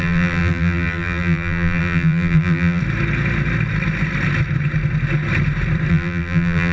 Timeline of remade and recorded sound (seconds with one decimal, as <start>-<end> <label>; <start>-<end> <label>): 0.0-2.8 remade; 2.8-5.9 recorded; 5.9-6.7 remade